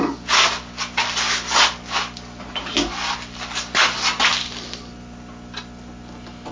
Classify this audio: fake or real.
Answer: real